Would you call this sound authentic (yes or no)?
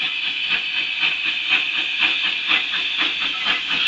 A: yes